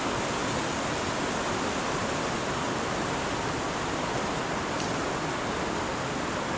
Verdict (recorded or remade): recorded